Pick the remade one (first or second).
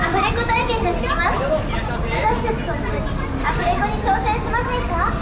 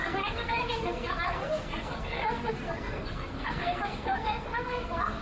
second